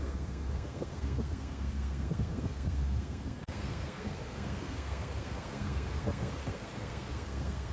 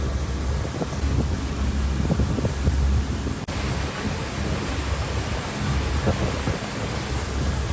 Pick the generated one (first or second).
first